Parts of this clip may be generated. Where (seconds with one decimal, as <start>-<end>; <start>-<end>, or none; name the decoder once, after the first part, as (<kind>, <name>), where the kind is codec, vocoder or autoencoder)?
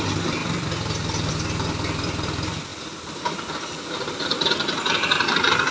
0.4-1.3 (vocoder, BigVGAN v2); 2.7-3.4